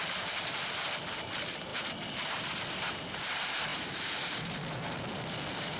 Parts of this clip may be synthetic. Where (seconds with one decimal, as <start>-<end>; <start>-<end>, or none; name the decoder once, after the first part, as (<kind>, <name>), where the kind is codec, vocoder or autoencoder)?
0.0-1.7 (vocoder, BigVGAN v2); 2.4-5.8